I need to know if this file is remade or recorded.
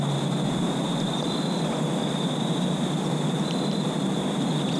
recorded